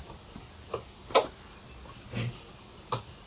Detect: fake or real real